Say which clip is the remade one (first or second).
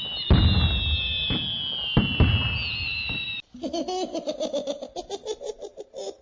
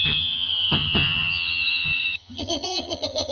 second